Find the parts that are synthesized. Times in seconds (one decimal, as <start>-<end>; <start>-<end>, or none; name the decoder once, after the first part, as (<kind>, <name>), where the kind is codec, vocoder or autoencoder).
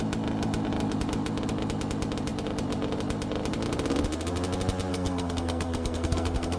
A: 4.9-6.6 (codec, SNAC)